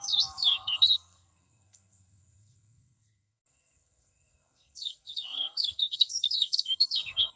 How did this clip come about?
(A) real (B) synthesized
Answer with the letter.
B